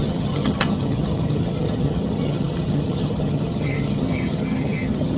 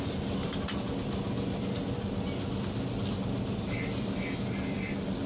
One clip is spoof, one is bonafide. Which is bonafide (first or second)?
second